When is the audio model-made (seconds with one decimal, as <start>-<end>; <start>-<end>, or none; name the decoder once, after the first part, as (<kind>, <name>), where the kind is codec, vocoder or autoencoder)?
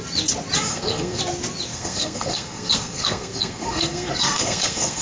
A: 0.7-1.2 (codec, SNAC); 1.7-5.0